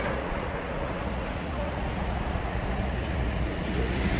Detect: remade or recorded remade